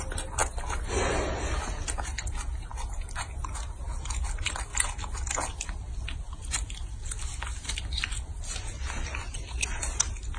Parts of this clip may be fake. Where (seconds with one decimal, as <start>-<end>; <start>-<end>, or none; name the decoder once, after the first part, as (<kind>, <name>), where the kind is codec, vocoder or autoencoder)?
none